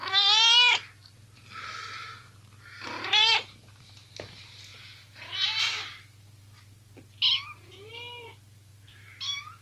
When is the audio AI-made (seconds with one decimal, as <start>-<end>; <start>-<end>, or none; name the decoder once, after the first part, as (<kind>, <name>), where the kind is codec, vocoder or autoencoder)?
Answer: none